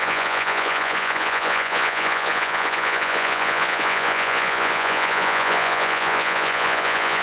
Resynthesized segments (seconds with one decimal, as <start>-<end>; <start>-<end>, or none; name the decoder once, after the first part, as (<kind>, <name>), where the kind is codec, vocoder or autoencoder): 0.0-7.2 (vocoder, Vocos)